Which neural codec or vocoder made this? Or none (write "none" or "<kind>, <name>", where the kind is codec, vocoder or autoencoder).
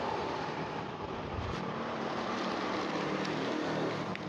vocoder, BigVGAN v2